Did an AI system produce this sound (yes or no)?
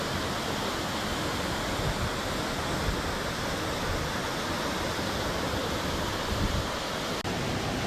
no